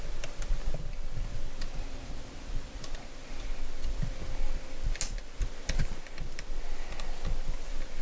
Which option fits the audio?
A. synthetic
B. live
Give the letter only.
B